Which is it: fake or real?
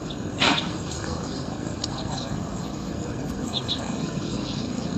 fake